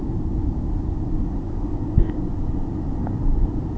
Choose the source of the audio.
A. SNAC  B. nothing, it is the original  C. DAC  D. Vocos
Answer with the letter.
B